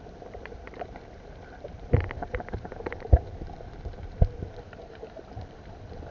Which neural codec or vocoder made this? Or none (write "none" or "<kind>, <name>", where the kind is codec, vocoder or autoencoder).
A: vocoder, BigVGAN v2